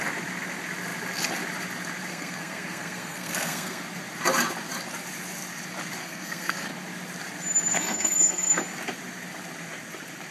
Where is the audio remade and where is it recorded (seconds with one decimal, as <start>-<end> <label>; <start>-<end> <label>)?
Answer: 0.0-2.1 recorded; 2.1-3.8 remade; 3.8-6.0 recorded; 6.0-6.7 remade; 6.7-7.7 recorded; 7.7-8.6 remade; 8.6-10.3 recorded